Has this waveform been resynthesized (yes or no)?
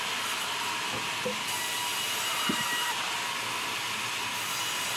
no